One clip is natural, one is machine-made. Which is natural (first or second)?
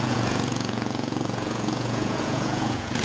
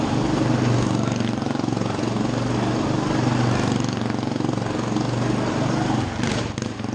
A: second